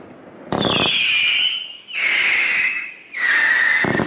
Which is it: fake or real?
real